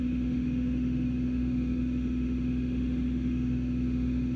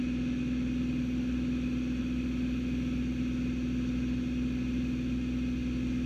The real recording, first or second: second